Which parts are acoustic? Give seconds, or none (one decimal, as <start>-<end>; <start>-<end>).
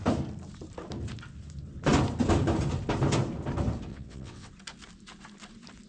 0.0-3.9; 4.5-5.9